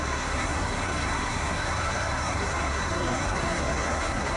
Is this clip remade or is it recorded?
remade